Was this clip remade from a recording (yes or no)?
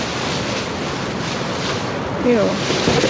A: no